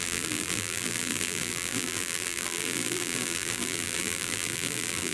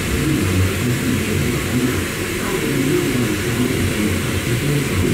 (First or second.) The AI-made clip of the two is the first